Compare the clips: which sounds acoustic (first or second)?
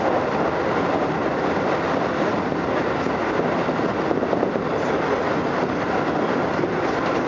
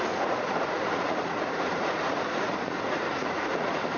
first